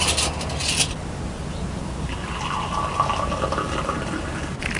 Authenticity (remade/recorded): recorded